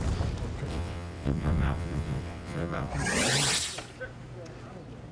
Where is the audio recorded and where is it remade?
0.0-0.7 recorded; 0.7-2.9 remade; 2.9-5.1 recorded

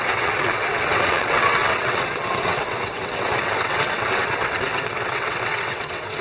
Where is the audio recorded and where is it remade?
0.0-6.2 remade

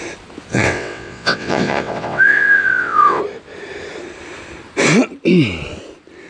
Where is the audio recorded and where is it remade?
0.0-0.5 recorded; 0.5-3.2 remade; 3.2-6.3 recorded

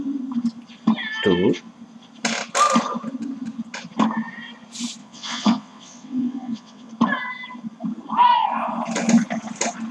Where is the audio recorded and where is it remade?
0.0-5.0 recorded; 5.0-6.9 remade; 6.9-9.9 recorded

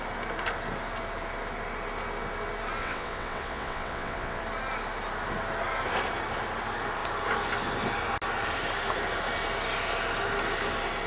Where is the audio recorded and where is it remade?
0.0-2.8 recorded; 2.8-4.4 remade; 4.4-11.1 recorded

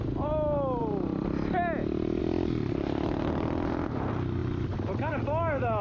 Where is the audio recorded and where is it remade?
0.0-5.8 recorded

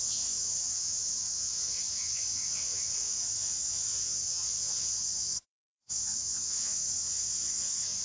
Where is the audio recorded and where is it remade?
0.0-8.0 remade